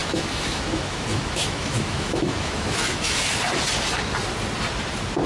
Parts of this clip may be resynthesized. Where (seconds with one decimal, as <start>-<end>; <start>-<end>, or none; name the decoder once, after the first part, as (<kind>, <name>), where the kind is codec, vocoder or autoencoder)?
0.0-3.2 (autoencoder, DAC-VAE)